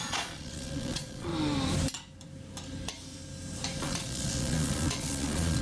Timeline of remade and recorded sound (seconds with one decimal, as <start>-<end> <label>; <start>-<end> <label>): 0.0-1.3 remade; 1.3-3.8 recorded; 3.8-5.6 remade